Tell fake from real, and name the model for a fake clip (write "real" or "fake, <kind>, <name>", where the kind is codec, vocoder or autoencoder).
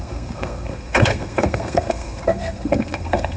fake, codec, SNAC